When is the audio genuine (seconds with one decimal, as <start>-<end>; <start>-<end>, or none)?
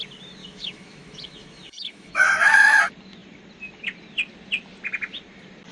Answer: 0.0-0.4; 2.8-5.7